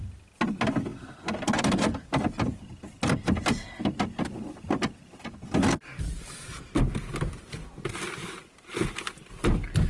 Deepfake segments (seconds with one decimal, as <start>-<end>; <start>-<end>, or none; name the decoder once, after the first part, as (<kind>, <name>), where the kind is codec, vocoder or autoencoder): none